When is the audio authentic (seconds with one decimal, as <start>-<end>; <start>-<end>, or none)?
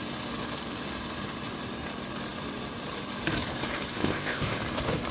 0.0-3.9; 4.6-5.1